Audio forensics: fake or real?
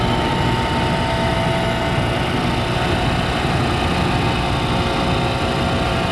real